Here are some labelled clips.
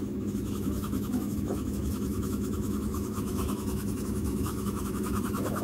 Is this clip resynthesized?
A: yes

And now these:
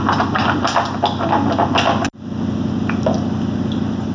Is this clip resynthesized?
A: no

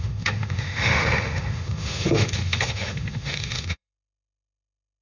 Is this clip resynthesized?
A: yes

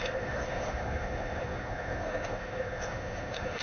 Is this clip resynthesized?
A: yes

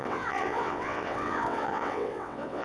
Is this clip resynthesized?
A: yes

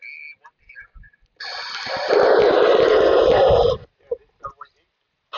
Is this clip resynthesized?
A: no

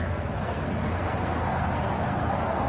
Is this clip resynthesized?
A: yes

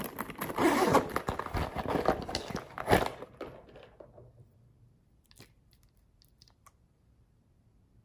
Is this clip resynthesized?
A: no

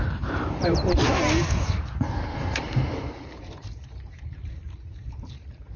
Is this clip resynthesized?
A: yes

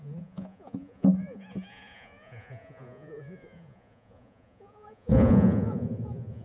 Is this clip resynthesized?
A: yes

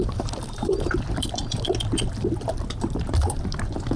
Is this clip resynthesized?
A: no